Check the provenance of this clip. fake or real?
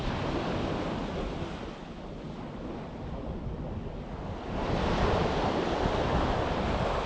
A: real